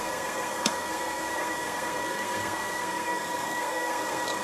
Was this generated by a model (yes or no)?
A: yes